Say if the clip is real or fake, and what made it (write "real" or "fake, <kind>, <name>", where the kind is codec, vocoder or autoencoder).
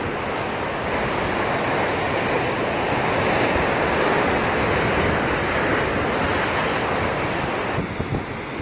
real